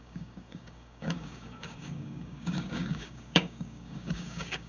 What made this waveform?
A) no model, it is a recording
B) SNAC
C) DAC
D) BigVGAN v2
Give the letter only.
C